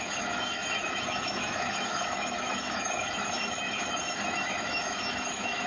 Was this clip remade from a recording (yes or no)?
yes